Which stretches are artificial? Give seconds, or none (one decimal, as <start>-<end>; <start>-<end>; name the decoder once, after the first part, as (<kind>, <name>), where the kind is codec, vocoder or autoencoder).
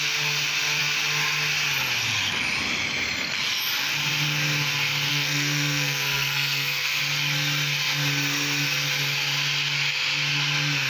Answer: 5.1-7.0 (codec, SNAC)